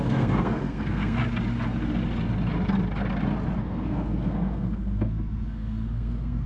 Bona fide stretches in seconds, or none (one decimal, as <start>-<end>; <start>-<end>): 1.2-3.6